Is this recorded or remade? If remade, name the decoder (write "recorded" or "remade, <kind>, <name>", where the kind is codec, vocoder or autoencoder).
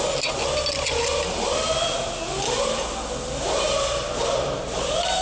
recorded